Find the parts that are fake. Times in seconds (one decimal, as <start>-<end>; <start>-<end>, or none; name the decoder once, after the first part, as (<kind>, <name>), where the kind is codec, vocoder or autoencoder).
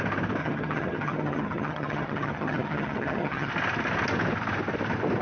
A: 0.4-3.5 (vocoder, HiFi-GAN)